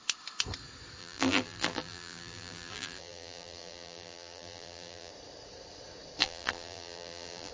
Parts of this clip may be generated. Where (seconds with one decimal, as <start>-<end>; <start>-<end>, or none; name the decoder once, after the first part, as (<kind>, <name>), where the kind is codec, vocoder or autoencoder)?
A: 1.0-5.1 (vocoder, BigVGAN v2); 6.2-7.5